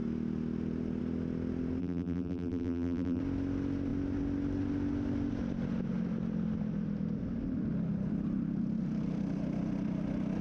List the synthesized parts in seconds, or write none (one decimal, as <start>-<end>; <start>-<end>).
1.8-3.2